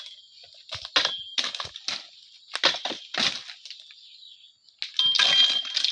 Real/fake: real